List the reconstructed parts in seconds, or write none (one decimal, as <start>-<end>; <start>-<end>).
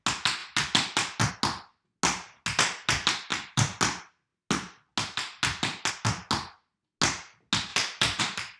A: 3.3-3.8; 7.7-8.2